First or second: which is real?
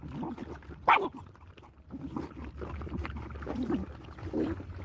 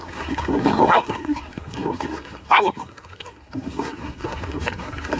first